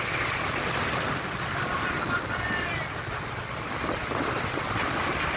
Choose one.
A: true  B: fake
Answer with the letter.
A